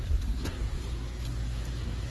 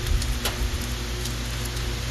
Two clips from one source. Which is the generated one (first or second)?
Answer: first